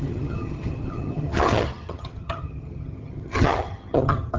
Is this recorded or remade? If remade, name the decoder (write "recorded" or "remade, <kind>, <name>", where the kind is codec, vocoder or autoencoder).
remade, vocoder, HiFi-GAN